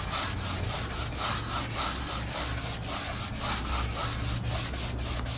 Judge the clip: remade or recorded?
recorded